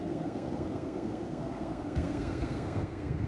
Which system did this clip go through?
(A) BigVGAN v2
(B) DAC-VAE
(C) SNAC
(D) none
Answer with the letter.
C